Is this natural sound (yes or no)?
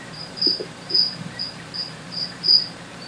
no